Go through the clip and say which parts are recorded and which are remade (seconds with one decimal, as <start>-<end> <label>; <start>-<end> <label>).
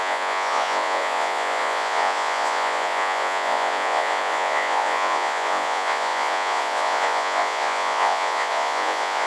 0.0-9.3 remade